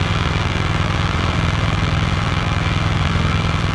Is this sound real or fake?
fake